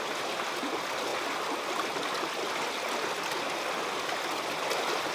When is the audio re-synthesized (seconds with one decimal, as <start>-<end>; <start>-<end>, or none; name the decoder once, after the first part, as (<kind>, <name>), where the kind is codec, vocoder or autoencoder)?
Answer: none